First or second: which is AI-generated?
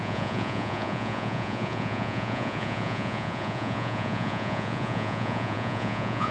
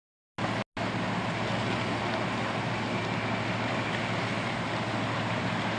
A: first